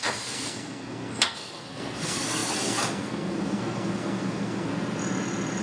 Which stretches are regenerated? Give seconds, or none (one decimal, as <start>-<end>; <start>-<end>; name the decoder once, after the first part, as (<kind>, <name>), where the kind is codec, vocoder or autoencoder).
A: 0.0-4.7 (codec, SNAC)